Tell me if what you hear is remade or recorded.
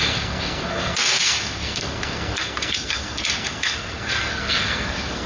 remade